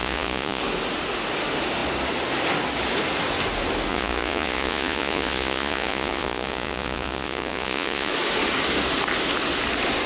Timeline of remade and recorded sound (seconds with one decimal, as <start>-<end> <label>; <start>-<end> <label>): 0.0-0.6 remade; 0.6-3.9 recorded; 3.9-8.1 remade; 8.1-10.1 recorded